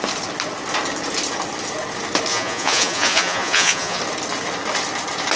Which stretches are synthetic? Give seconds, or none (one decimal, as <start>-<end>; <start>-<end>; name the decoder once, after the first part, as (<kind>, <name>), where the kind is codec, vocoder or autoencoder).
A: 2.3-4.0 (vocoder, Vocos)

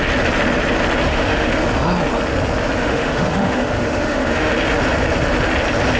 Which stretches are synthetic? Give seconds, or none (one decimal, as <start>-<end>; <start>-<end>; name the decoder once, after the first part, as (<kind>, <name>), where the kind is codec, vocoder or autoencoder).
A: 1.1-1.6 (autoencoder, DAC-VAE); 2.8-4.5

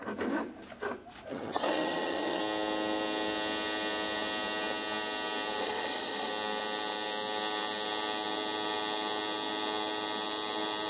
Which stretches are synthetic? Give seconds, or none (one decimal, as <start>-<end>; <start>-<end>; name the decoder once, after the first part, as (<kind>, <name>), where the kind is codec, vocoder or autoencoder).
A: 1.3-2.4 (vocoder, HiFi-GAN); 5.6-6.3

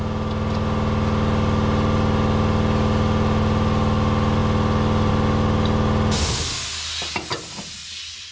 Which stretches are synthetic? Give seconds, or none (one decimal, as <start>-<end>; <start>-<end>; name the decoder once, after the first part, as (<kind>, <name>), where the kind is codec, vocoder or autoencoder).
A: none

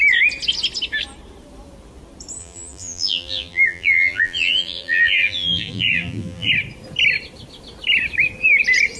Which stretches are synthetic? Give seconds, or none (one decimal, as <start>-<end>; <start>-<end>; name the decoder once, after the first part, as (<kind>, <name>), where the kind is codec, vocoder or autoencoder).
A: 2.4-6.5 (vocoder, BigVGAN v2)

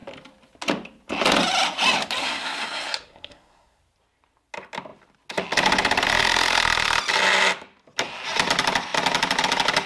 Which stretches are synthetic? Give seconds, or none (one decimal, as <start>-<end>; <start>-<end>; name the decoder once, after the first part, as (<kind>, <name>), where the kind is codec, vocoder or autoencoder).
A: 2.2-3.8 (codec, SNAC)